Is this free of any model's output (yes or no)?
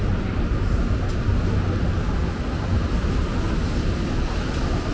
yes